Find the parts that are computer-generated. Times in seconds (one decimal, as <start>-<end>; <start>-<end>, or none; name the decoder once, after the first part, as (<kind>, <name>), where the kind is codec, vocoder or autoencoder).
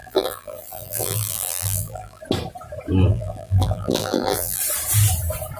0.0-2.2 (vocoder, BigVGAN v2); 3.1-4.6